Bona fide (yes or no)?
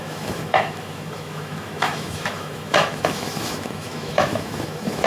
no